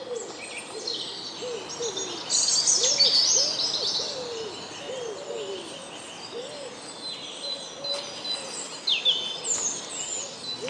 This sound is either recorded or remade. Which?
recorded